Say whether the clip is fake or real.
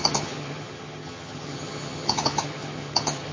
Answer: fake